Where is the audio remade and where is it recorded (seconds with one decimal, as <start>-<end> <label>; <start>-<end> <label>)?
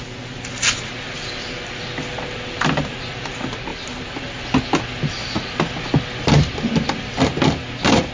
0.0-8.1 recorded